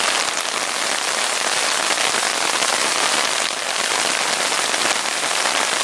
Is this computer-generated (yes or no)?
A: no